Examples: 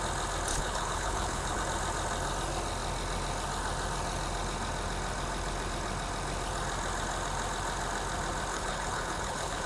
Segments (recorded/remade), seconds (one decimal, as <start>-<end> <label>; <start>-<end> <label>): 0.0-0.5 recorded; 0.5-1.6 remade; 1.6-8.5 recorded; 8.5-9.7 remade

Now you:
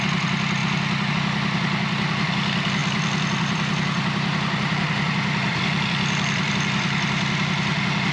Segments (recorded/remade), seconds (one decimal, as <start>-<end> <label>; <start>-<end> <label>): 0.0-2.8 recorded; 2.8-6.5 remade; 6.5-8.1 recorded

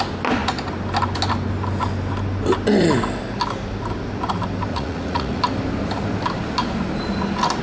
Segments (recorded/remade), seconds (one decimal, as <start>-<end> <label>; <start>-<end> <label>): 0.0-4.7 recorded; 4.7-5.4 remade; 5.4-7.6 recorded